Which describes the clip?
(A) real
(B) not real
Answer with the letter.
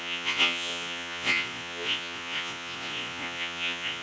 B